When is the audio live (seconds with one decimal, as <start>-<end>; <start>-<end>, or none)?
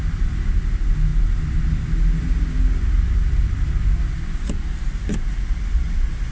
0.0-6.3